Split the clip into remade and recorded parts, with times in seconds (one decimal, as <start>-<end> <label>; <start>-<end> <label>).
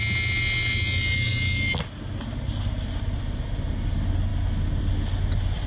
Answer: 0.0-5.7 recorded